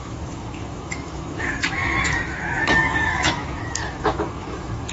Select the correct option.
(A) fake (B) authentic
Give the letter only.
A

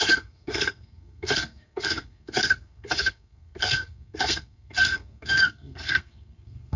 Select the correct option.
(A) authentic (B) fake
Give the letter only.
B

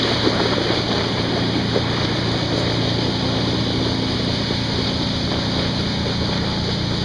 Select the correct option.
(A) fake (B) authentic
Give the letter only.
B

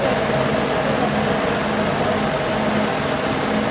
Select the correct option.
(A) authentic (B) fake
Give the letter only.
A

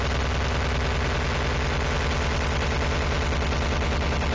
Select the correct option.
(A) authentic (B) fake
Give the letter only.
A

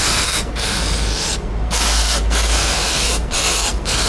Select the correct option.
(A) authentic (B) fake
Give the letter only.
B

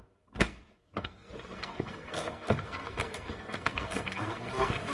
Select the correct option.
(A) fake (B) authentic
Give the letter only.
A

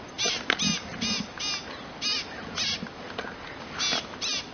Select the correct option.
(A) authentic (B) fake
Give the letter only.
A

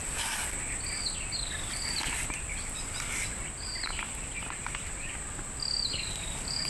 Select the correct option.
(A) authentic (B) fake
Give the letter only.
A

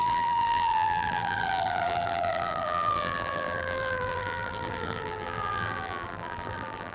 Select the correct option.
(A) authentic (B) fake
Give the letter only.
B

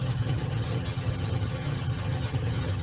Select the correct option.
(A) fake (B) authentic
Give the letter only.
A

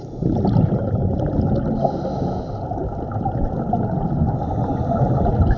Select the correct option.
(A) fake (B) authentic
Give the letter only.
B